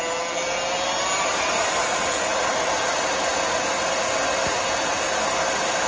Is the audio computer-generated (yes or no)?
no